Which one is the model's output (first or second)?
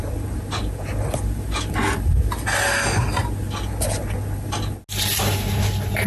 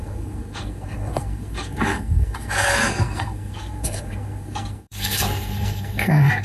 second